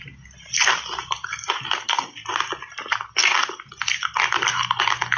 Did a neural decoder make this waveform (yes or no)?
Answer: no